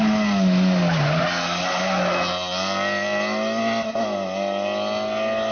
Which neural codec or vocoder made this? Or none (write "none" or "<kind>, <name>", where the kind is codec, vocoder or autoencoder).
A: none